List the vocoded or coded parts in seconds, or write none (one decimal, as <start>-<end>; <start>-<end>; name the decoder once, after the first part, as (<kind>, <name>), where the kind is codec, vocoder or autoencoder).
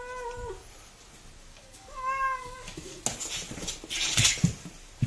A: 1.5-3.0 (codec, DAC)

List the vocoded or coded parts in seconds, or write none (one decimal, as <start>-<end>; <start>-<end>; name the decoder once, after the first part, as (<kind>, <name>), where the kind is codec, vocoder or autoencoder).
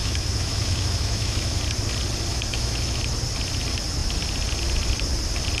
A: 0.0-1.6 (autoencoder, DAC-VAE); 2.3-3.0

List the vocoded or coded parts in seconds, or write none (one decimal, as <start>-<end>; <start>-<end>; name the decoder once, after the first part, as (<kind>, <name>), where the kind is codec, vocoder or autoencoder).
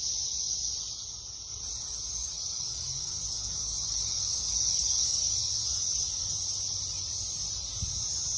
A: 2.2-6.4 (codec, DAC)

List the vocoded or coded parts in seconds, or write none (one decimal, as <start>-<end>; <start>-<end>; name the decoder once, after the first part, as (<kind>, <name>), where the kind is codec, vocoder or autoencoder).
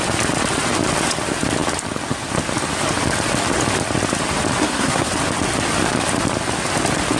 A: 4.6-5.1 (codec, SNAC)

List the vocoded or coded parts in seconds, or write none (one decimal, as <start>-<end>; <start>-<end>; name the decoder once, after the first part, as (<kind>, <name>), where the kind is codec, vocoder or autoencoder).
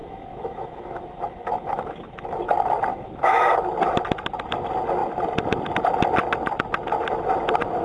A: 0.0-2.4 (autoencoder, DAC-VAE); 2.9-3.5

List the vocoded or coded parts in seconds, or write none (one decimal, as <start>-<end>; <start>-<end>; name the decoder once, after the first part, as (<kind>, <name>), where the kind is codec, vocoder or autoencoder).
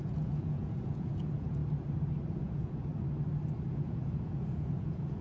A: 0.0-1.6 (vocoder, Vocos); 2.3-2.9; 3.7-5.2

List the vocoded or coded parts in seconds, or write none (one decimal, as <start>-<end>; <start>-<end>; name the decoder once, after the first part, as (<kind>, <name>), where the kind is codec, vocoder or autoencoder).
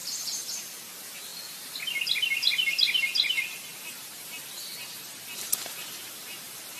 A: 0.0-0.5 (vocoder, BigVGAN v2); 3.7-6.8